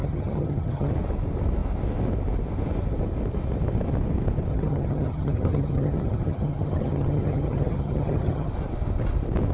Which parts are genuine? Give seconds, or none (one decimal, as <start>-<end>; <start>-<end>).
0.9-4.5; 8.5-9.5